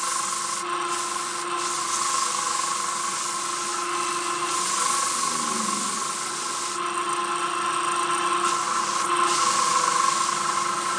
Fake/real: real